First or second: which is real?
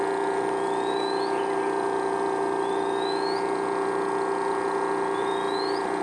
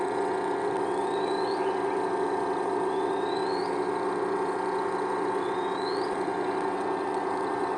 first